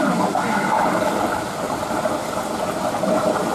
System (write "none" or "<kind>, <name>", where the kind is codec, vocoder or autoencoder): none